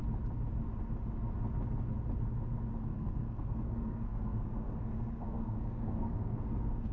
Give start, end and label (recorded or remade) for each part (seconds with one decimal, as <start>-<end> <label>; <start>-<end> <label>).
0.0-2.8 recorded; 2.8-6.9 remade